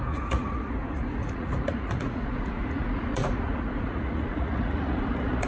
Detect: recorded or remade remade